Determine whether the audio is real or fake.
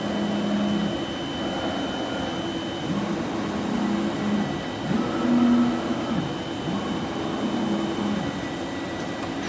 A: real